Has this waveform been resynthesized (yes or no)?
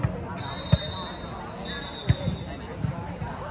no